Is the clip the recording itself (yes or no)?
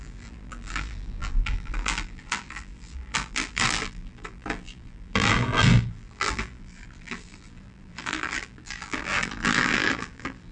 no